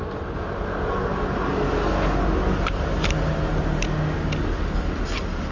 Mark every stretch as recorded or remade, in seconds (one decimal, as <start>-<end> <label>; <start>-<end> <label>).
0.0-5.5 recorded